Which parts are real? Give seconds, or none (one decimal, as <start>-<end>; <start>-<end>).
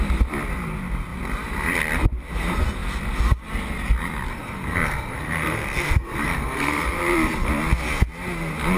0.0-4.3; 7.0-8.8